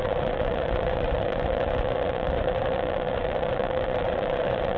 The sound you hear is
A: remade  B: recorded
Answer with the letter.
A